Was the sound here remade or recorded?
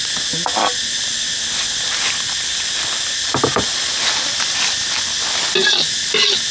recorded